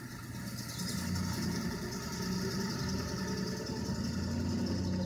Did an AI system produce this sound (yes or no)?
no